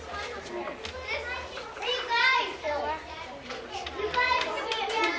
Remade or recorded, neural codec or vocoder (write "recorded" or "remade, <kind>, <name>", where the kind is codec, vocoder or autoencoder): recorded